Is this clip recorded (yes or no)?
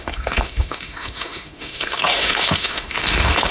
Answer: no